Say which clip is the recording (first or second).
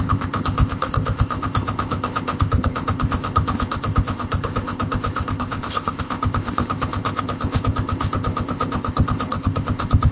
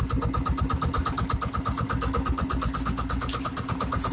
second